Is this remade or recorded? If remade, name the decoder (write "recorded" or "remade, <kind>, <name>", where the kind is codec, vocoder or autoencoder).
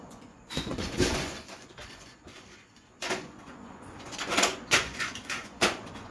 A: remade, vocoder, Vocos